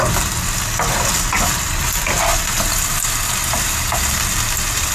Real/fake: real